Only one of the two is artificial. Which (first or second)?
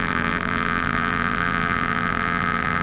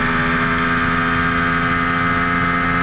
first